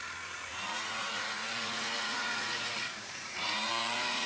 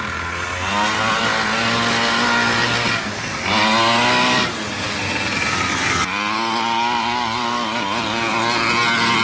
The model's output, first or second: first